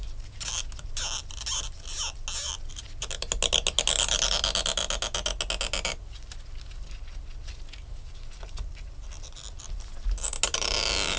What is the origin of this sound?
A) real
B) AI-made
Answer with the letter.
A